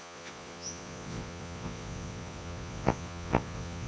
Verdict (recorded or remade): remade